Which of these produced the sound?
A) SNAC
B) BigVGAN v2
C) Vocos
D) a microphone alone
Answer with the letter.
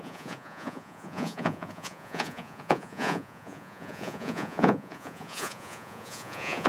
C